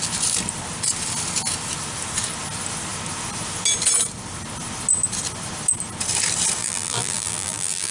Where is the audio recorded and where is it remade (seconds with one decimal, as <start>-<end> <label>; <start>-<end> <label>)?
0.0-6.6 recorded; 6.6-7.9 remade